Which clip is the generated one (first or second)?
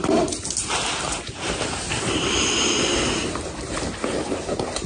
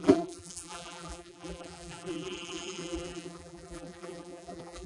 second